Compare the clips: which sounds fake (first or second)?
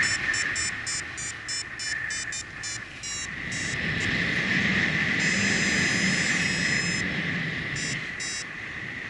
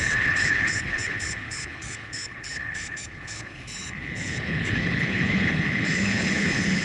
second